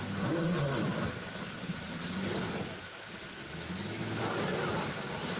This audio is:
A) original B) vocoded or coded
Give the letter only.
A